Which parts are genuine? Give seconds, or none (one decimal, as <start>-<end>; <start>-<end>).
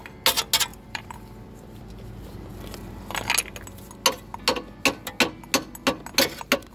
0.0-0.7; 1.9-6.7